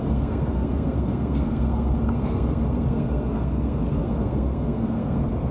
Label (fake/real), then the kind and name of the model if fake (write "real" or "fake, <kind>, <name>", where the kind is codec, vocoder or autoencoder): fake, codec, SNAC